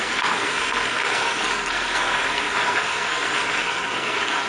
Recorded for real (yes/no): no